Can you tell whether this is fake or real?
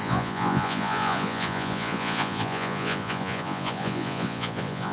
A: fake